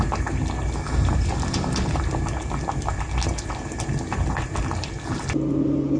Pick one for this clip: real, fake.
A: real